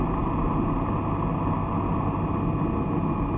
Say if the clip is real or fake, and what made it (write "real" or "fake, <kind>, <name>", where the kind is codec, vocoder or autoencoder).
real